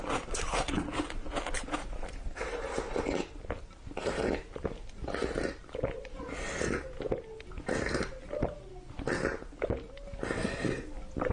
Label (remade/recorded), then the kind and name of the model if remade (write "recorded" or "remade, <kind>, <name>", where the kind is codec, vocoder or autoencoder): recorded